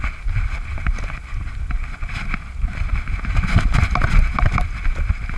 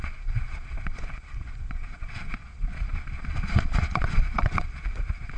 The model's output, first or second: second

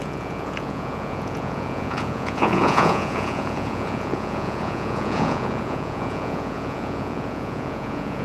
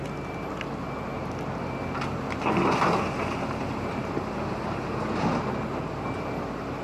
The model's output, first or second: first